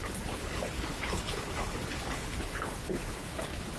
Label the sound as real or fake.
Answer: fake